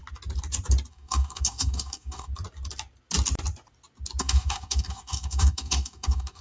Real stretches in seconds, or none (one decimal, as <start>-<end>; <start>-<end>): 0.0-0.9; 2.3-4.2